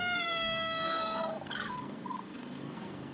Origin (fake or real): fake